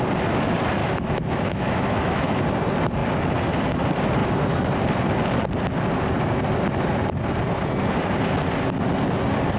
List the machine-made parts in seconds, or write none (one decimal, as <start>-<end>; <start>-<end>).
0.8-2.4